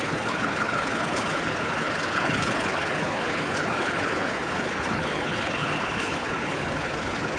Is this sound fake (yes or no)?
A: yes